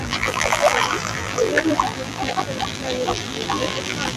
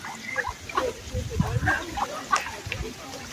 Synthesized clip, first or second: first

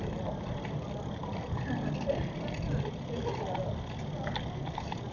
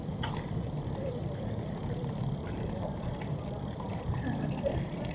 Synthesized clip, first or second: second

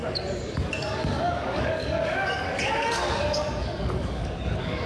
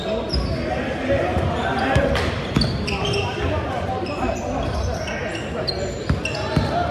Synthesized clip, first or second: first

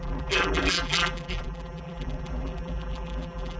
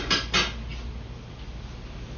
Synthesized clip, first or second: first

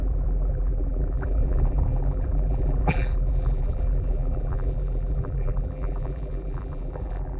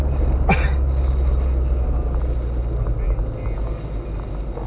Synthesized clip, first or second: first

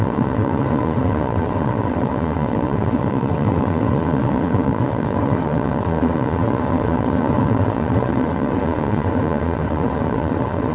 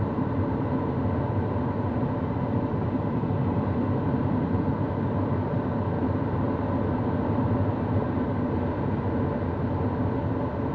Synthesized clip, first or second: first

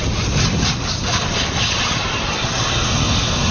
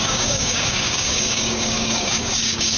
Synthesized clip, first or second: second